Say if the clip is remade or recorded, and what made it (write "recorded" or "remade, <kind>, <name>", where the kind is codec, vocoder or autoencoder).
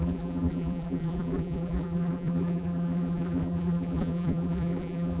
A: remade, vocoder, BigVGAN v2